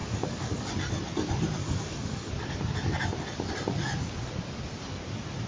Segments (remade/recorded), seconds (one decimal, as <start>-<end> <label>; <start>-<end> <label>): 0.0-0.7 remade; 0.7-1.6 recorded; 1.6-2.3 remade; 2.3-5.5 recorded